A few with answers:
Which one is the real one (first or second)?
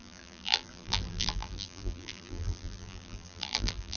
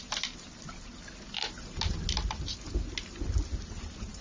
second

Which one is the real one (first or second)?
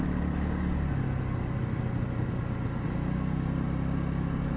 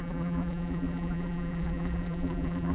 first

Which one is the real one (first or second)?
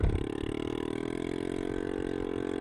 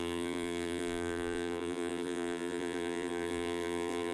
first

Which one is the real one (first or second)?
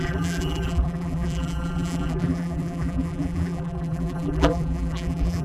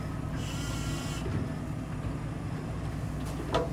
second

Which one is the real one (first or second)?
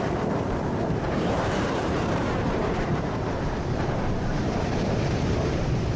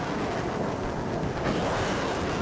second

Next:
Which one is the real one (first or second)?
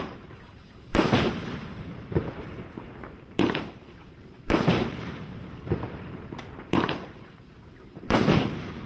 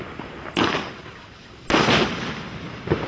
second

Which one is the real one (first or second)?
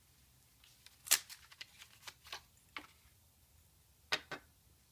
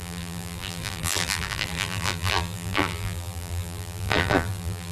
first